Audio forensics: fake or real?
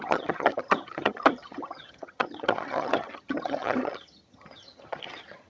fake